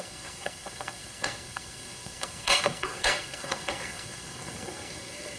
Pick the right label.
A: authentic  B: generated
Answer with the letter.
B